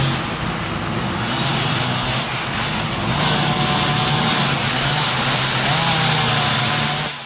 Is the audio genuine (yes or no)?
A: yes